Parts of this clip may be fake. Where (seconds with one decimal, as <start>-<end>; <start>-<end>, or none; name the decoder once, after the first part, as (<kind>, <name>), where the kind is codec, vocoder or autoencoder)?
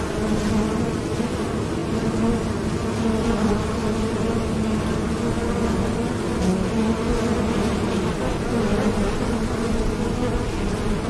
none